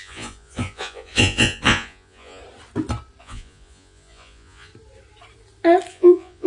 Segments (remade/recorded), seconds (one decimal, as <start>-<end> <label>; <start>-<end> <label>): 0.0-2.4 remade; 2.4-3.2 recorded; 3.2-4.7 remade; 4.7-5.9 recorded; 5.9-6.5 remade